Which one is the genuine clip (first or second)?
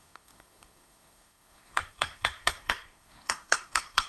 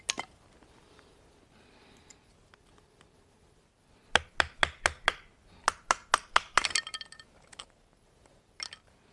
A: second